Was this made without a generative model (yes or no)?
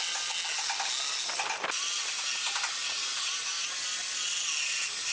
yes